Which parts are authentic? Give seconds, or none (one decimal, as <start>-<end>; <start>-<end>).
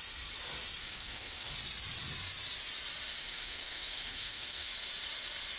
0.0-0.8; 1.5-3.2; 4.7-5.6